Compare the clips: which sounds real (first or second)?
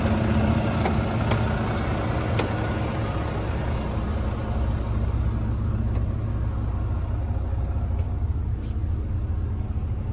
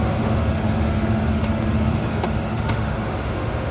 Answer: first